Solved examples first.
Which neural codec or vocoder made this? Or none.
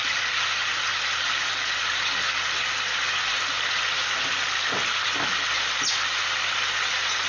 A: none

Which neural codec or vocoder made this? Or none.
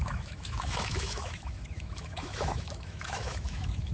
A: autoencoder, DAC-VAE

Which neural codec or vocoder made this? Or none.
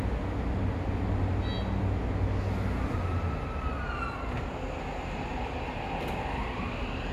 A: none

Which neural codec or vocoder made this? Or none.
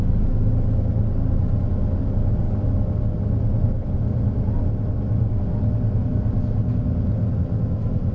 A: none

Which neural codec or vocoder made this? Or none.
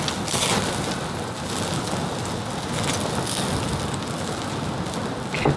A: none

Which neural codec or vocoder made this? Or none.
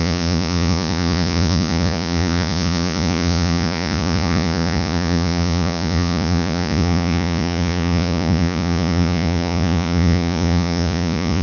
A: vocoder, Vocos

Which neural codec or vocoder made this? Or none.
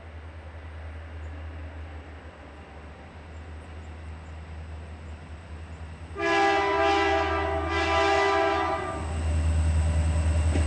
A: none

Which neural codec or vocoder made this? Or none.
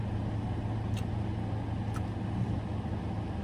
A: none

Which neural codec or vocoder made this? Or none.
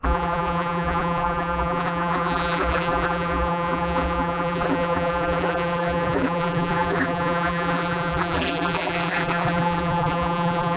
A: vocoder, BigVGAN v2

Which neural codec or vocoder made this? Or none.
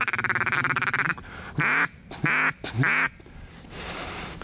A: none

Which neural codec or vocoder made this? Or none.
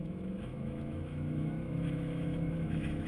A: autoencoder, DAC-VAE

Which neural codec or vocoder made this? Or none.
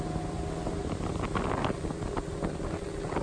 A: none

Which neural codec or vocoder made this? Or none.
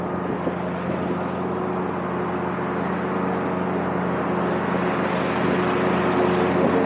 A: none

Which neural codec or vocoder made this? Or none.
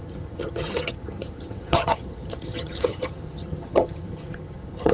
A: vocoder, HiFi-GAN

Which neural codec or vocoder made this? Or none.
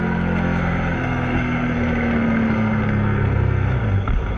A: codec, SNAC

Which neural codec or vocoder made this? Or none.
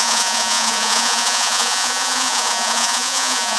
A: vocoder, Vocos